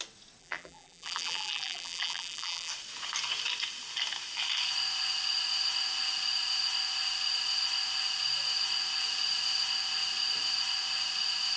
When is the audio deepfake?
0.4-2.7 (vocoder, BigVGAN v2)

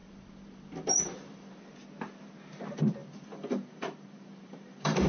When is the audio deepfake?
0.0-1.5 (vocoder, BigVGAN v2); 3.0-5.1

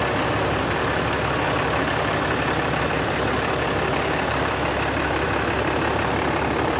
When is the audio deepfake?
0.0-0.8 (vocoder, BigVGAN v2); 1.8-4.3; 5.0-6.8

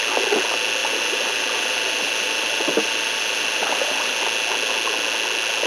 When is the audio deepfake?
0.8-4.2 (vocoder, BigVGAN v2)

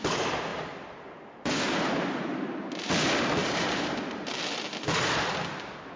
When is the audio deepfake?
0.5-2.9 (vocoder, BigVGAN v2); 3.4-4.3

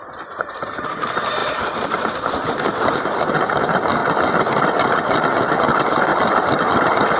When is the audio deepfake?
0.0-4.0 (vocoder, BigVGAN v2); 5.2-6.1; 6.6-7.2

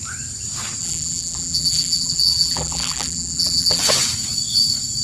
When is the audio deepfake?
0.8-3.8 (vocoder, BigVGAN v2)